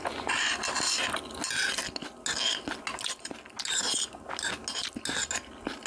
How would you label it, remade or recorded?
recorded